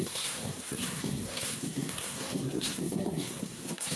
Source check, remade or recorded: remade